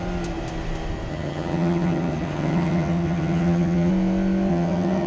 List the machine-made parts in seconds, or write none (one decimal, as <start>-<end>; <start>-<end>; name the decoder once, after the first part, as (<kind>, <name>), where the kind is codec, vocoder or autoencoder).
1.1-3.9 (vocoder, HiFi-GAN); 4.5-5.1